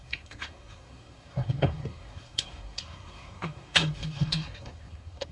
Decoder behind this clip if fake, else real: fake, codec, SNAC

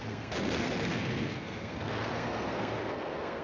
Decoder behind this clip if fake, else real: fake, codec, SNAC